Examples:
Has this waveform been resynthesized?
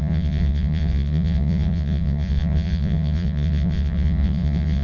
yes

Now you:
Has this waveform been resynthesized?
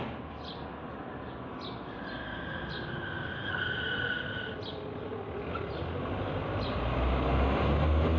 no